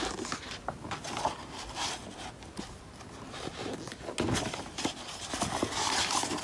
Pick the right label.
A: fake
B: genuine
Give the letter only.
B